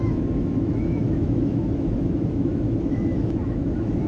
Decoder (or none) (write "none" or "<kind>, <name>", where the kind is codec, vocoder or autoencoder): autoencoder, DAC-VAE